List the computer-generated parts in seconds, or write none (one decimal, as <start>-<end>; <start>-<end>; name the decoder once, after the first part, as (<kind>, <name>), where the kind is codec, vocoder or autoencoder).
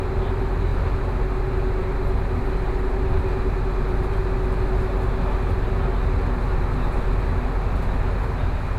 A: none